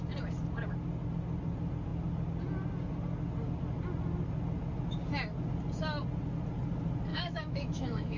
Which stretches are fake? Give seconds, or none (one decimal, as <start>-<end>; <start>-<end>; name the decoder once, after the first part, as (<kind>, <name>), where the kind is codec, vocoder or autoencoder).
7.1-8.2 (autoencoder, DAC-VAE)